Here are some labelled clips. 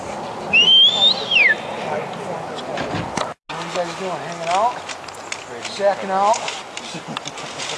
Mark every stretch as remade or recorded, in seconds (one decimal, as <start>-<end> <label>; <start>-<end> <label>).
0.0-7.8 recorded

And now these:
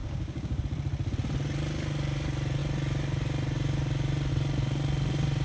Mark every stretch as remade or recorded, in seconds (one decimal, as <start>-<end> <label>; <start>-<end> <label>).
0.0-0.6 remade; 0.6-5.4 recorded

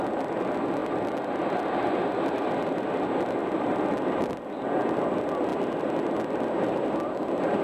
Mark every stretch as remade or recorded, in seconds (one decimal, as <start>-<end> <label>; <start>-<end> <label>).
0.0-7.6 recorded

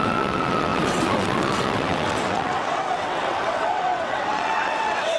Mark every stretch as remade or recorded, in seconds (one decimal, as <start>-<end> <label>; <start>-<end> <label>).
0.0-5.2 remade

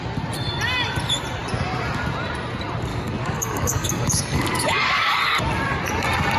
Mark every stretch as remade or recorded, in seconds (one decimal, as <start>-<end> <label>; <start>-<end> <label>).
0.0-2.9 recorded; 2.9-5.2 remade; 5.2-6.4 recorded

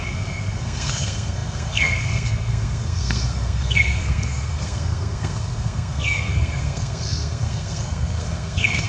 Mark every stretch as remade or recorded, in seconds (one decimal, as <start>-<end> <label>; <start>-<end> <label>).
0.0-8.9 remade

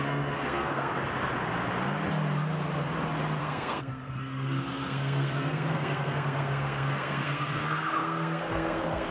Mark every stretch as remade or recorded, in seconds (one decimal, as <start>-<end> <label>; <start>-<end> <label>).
0.0-0.9 remade; 0.9-3.4 recorded; 3.4-9.1 remade

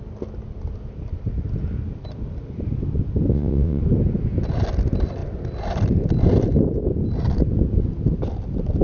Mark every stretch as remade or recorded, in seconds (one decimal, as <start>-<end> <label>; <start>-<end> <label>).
0.0-3.3 recorded; 3.3-3.8 remade; 3.8-8.8 recorded